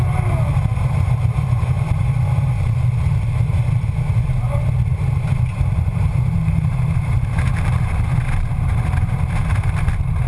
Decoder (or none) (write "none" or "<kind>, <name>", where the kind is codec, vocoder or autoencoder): vocoder, BigVGAN v2